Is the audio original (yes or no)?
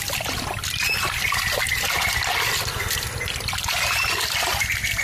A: yes